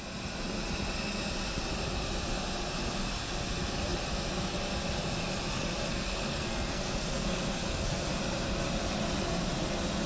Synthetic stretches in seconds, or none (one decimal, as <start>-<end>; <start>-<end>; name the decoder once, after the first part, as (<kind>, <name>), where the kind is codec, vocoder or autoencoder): 5.9-8.1 (codec, SNAC)